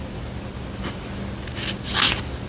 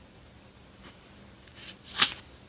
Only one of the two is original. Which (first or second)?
first